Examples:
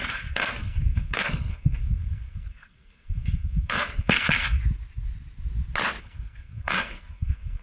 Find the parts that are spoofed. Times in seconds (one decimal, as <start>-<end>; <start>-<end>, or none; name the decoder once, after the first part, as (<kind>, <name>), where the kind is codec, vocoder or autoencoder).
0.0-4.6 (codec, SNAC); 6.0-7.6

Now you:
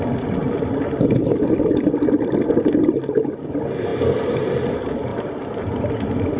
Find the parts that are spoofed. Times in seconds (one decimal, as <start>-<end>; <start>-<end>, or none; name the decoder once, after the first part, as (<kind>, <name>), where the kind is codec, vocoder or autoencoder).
none

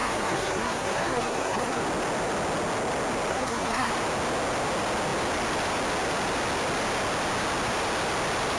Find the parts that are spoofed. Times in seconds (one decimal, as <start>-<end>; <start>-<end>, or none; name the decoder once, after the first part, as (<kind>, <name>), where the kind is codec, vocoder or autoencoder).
0.0-1.8 (codec, SNAC); 3.3-3.9

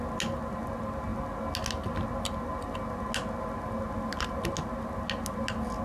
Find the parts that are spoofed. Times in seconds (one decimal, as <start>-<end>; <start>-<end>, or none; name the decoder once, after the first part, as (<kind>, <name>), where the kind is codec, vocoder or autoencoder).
none

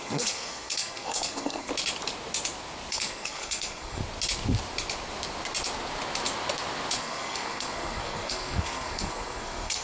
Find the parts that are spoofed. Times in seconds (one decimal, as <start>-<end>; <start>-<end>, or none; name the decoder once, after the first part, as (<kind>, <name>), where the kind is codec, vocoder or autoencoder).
0.0-1.7 (codec, SNAC); 2.9-4.0; 7.0-9.8